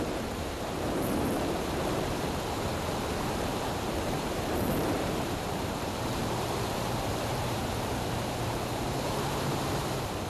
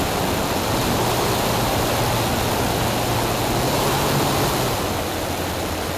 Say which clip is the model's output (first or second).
first